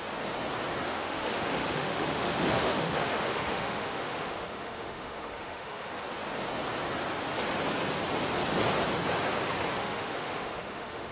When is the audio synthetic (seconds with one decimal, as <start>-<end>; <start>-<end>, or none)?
0.9-5.9; 9.8-11.1